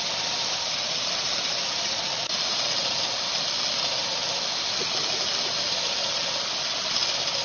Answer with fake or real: real